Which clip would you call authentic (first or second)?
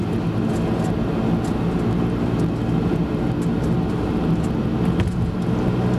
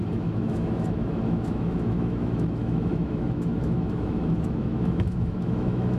first